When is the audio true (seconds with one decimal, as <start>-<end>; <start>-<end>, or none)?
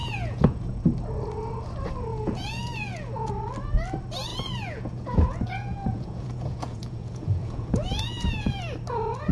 0.8-2.1; 3.3-4.3; 8.6-9.3